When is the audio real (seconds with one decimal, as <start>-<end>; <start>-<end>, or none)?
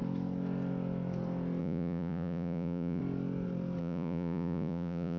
0.0-1.6; 3.0-3.8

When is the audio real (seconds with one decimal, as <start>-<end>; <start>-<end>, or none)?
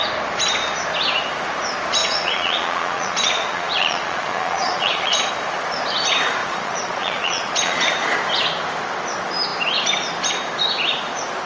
0.0-2.0; 5.3-6.4; 7.9-11.5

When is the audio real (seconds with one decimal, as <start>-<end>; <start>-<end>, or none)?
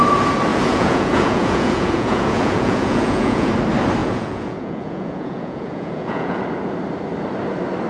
0.0-0.5; 3.5-4.0; 6.4-7.9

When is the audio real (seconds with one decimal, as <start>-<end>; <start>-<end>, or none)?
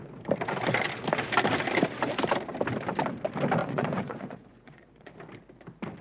0.0-3.6; 5.1-6.0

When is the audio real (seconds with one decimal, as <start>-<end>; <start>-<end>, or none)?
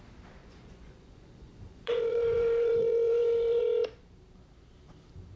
0.0-0.4; 3.6-5.4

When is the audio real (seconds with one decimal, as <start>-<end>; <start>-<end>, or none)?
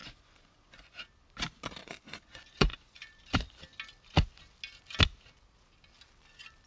1.0-1.8; 3.1-6.7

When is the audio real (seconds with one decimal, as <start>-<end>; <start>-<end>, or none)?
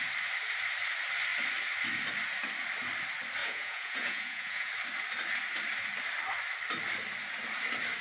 0.0-3.4; 4.7-8.0